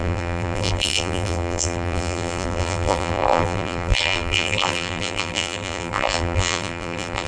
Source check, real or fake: fake